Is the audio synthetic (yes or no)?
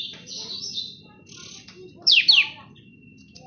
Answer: yes